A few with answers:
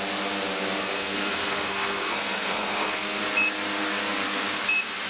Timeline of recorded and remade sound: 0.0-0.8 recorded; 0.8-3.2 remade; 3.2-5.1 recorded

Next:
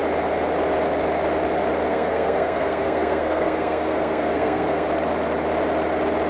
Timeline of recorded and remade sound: 0.0-1.9 recorded; 1.9-4.9 remade; 4.9-6.3 recorded

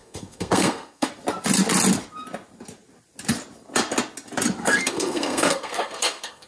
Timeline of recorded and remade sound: 0.0-1.1 remade; 1.1-4.6 recorded; 4.6-6.5 remade